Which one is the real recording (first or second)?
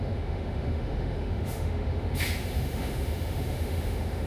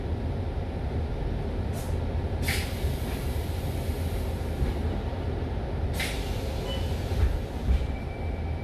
second